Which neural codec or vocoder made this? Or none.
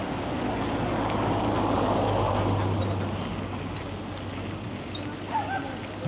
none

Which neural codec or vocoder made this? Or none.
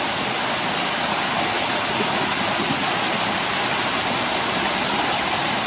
none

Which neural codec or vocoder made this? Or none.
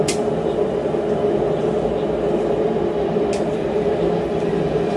none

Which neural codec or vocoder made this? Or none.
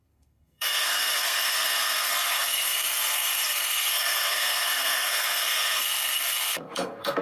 codec, SNAC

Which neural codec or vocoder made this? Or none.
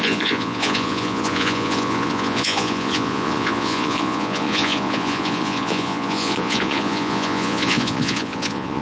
vocoder, Vocos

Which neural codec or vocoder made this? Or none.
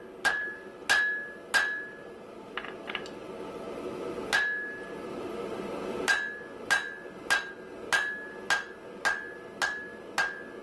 none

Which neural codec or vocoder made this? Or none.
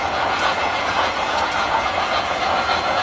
vocoder, Vocos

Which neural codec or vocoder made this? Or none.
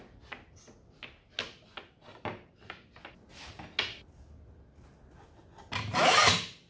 none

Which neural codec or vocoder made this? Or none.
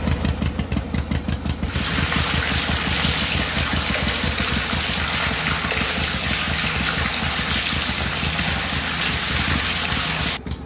none